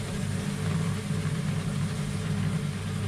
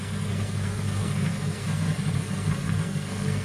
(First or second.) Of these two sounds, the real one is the first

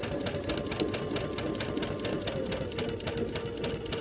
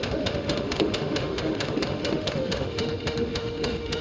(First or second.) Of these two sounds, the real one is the first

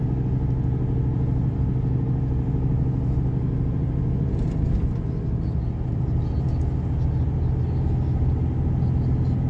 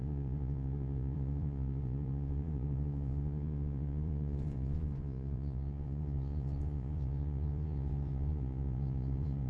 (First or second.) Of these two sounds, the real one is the first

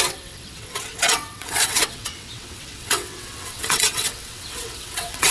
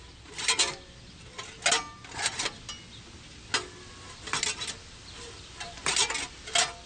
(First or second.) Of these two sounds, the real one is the second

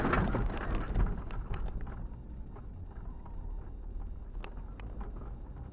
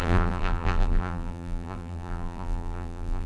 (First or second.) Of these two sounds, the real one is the first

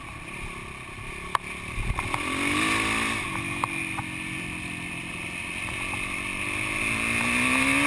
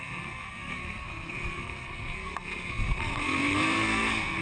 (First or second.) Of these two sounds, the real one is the first